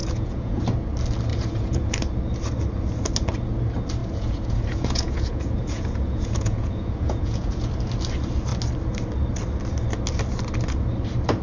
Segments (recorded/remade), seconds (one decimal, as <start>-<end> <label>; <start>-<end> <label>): 0.0-0.6 remade; 0.6-1.3 recorded; 1.3-1.9 remade; 1.9-4.0 recorded; 4.0-7.7 remade; 7.7-11.4 recorded